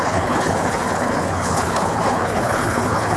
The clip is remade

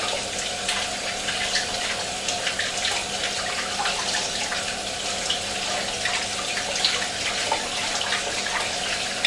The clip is recorded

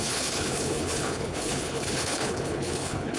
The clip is remade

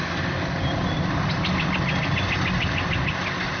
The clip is recorded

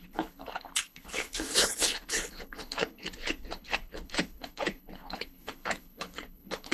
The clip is remade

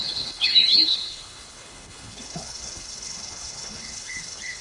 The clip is remade